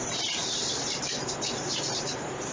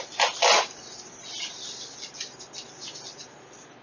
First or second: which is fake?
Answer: first